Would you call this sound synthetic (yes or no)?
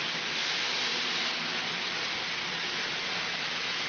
no